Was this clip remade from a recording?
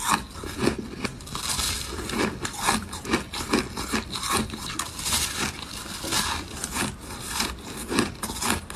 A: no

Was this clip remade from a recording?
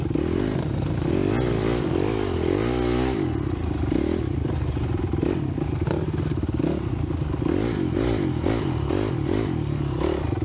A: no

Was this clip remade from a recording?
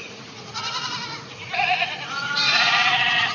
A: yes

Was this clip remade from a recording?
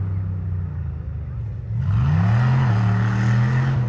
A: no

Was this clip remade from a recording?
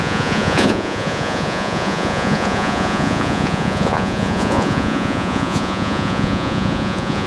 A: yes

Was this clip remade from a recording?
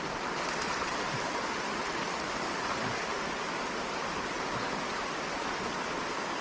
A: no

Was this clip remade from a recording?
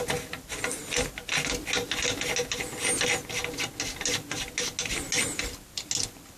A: no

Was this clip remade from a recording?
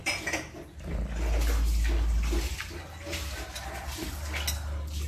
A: no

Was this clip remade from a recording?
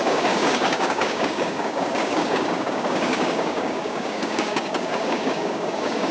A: yes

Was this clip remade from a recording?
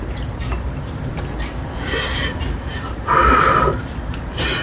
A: yes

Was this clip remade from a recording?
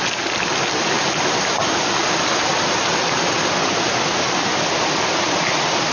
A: no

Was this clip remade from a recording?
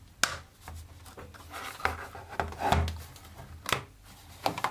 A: no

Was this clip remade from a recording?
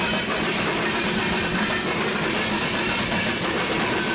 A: no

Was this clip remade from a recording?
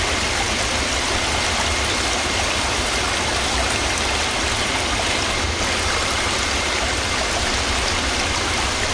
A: no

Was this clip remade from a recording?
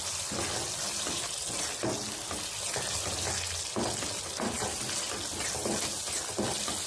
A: no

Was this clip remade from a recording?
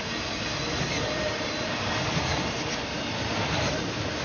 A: yes